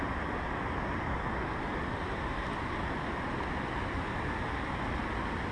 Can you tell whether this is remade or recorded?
recorded